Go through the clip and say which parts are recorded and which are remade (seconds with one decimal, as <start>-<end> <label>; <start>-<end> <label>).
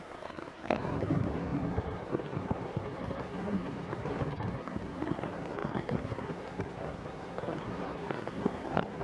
0.0-9.0 remade